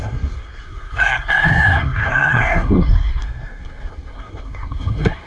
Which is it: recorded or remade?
remade